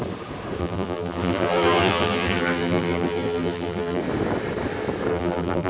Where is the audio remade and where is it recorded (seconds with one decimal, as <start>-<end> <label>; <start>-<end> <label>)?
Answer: 0.0-0.6 recorded; 0.6-4.0 remade; 4.0-5.1 recorded; 5.1-5.7 remade